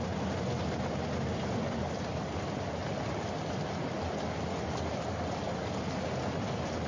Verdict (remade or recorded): recorded